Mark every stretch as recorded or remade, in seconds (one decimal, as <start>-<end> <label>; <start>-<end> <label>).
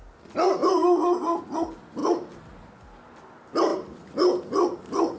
0.0-0.6 recorded; 0.6-1.4 remade; 1.4-5.2 recorded